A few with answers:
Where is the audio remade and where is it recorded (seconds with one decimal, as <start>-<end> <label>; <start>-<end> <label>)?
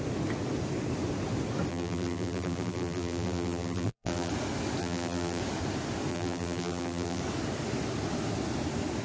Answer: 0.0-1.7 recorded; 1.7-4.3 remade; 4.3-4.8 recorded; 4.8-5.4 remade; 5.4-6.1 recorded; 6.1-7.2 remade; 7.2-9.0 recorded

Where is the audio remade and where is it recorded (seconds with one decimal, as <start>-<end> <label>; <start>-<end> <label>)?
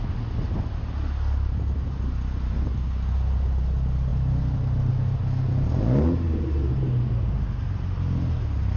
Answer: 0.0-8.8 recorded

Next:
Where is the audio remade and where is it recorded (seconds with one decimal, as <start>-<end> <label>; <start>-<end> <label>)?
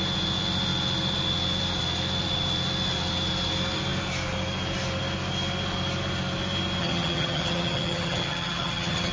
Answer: 0.0-6.8 recorded; 6.8-9.1 remade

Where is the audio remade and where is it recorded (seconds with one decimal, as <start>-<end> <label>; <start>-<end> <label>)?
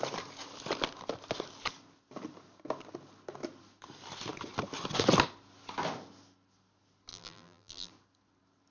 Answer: 0.0-7.1 recorded; 7.1-7.9 remade; 7.9-8.7 recorded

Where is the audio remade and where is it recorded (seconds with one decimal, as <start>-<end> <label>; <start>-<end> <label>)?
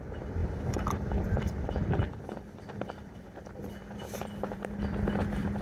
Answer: 0.0-5.6 remade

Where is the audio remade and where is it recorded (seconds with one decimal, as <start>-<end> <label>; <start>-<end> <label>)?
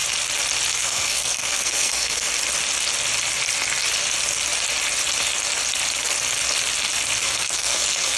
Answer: 0.0-0.8 recorded; 0.8-2.3 remade; 2.3-7.2 recorded; 7.2-8.2 remade